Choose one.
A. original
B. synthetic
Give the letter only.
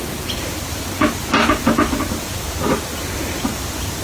A